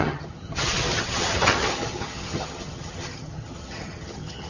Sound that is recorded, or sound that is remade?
remade